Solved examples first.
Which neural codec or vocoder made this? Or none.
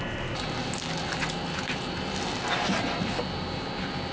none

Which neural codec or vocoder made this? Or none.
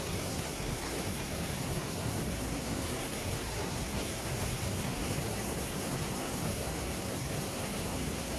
codec, SNAC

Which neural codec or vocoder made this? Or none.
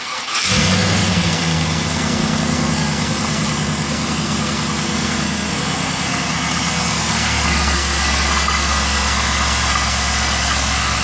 codec, SNAC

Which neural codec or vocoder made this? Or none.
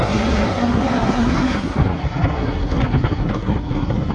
codec, SNAC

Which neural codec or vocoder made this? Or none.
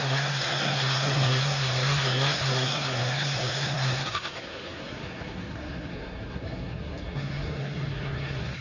codec, SNAC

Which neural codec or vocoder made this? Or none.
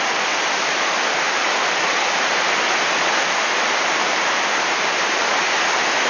none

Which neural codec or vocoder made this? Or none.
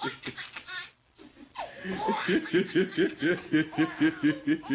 none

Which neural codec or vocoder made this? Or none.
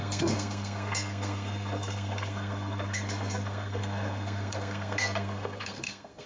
codec, SNAC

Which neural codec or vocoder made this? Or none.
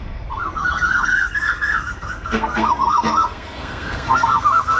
codec, SNAC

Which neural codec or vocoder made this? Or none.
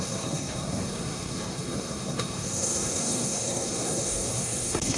codec, SNAC